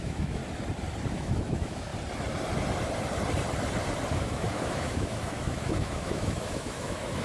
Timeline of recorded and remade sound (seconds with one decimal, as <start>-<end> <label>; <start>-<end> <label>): 0.0-0.4 remade; 0.4-1.1 recorded; 1.1-1.9 remade; 1.9-4.1 recorded; 4.1-7.2 remade

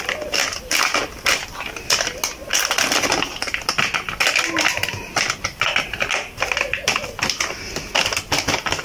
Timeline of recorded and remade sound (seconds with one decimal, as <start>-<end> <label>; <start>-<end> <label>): 0.0-0.4 recorded; 0.4-1.7 remade; 1.7-2.4 recorded; 2.4-5.8 remade; 5.8-8.8 recorded

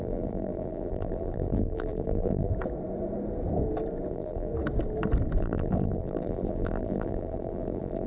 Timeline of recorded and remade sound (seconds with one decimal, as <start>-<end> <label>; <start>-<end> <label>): 0.0-2.5 remade; 2.5-4.1 recorded; 4.1-4.5 remade; 4.5-5.4 recorded; 5.4-8.1 remade

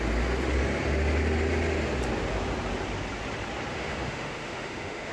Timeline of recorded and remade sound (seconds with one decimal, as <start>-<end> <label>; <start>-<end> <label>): 0.0-3.7 recorded; 3.7-5.1 remade

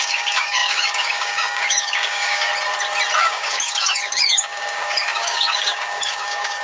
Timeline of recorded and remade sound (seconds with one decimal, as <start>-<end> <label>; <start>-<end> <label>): 0.0-2.5 remade; 2.5-3.2 recorded; 3.2-6.6 remade